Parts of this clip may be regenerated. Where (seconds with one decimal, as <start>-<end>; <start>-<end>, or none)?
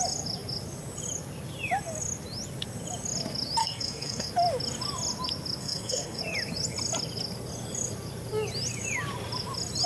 3.6-4.3; 5.6-6.2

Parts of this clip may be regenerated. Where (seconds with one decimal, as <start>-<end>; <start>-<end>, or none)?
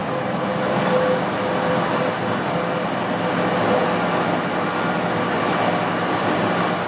none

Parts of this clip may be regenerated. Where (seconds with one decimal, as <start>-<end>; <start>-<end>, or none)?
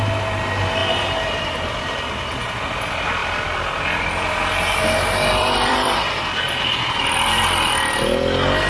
3.2-6.2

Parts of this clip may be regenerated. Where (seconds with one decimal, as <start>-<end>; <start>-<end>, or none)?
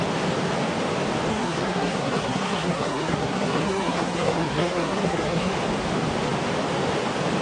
1.3-5.5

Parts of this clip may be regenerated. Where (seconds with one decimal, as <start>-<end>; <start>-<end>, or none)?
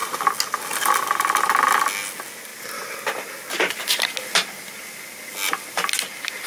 none